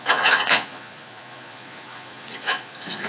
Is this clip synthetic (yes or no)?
yes